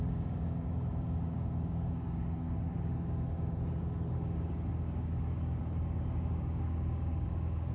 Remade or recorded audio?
remade